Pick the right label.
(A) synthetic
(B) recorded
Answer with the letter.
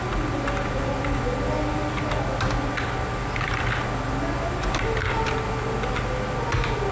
B